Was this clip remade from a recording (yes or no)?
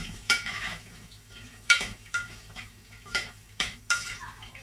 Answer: yes